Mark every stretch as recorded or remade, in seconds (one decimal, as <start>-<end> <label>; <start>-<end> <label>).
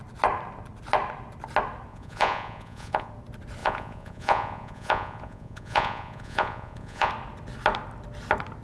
0.0-1.9 recorded; 1.9-3.1 remade; 3.1-3.6 recorded; 3.6-7.1 remade; 7.1-8.6 recorded